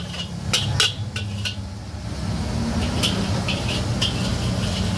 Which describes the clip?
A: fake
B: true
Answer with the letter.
B